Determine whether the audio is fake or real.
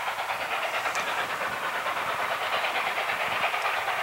real